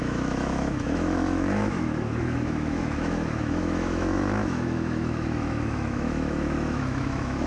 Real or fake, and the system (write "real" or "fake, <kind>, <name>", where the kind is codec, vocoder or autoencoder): fake, autoencoder, DAC-VAE